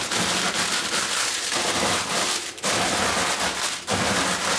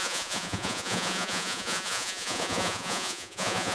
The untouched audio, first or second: first